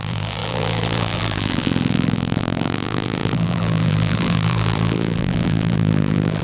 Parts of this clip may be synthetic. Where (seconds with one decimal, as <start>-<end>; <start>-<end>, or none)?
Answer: 0.0-6.4